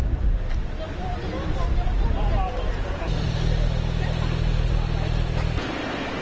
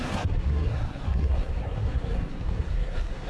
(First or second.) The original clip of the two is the first